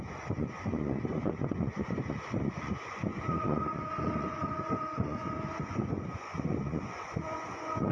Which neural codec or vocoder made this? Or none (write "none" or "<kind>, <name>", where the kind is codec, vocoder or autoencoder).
vocoder, Vocos